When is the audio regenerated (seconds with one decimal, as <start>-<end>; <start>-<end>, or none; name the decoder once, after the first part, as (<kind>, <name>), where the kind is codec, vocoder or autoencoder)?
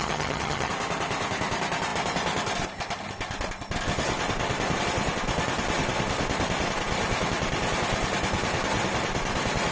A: 0.0-0.7 (vocoder, HiFi-GAN)